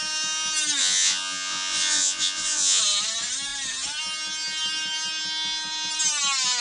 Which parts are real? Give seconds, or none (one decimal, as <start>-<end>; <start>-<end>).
0.0-0.8; 2.8-6.6